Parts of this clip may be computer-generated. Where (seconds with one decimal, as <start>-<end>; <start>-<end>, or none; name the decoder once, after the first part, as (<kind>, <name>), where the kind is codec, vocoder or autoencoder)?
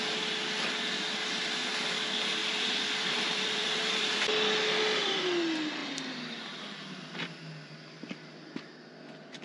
2.4-4.3 (vocoder, BigVGAN v2)